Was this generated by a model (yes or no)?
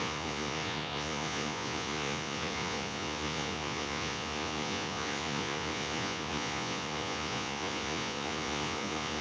yes